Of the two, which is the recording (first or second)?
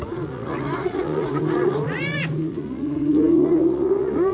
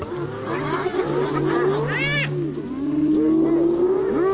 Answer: second